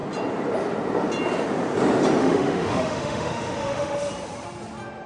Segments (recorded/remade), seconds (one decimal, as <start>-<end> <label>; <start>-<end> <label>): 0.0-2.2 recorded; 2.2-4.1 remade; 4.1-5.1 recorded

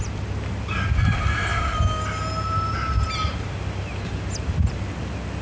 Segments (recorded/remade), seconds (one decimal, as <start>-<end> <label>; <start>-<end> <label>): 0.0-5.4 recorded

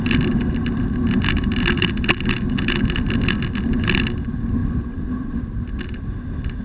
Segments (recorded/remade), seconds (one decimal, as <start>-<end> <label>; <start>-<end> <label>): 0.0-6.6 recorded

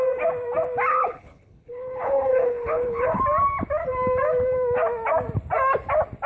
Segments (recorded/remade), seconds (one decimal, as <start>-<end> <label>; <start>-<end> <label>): 0.0-0.9 recorded; 0.9-3.2 remade; 3.2-6.3 recorded

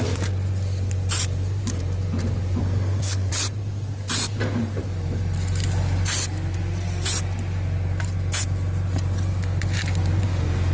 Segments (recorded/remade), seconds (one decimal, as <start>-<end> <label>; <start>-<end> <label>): 0.0-2.6 recorded; 2.6-3.3 remade; 3.3-10.7 recorded